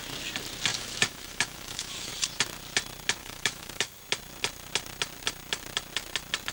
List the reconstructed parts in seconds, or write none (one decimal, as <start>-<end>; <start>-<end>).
0.7-2.1; 3.2-4.0